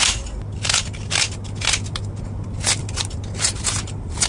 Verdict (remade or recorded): recorded